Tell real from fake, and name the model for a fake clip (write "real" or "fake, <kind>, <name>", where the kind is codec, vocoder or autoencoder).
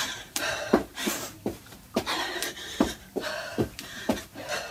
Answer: fake, vocoder, BigVGAN v2